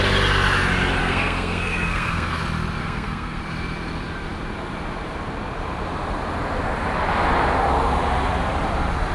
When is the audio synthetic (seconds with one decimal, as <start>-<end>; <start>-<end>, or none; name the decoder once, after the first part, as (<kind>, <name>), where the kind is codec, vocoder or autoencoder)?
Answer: 1.0-2.4 (codec, SNAC); 2.8-3.4